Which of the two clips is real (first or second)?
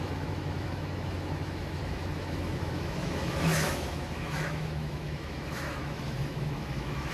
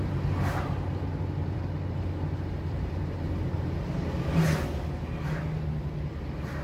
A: second